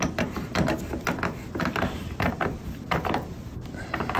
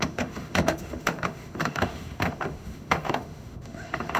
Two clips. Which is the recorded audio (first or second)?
first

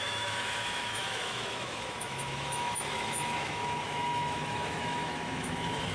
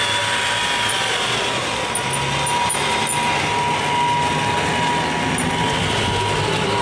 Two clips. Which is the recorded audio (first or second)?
second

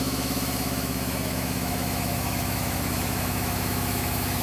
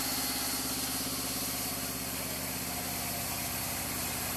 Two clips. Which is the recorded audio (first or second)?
second